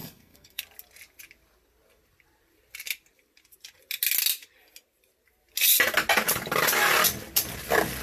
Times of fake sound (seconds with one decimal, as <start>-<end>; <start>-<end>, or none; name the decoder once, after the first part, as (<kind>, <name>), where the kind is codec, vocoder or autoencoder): 0.0-0.6 (codec, SNAC)